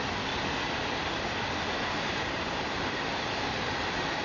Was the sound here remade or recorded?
recorded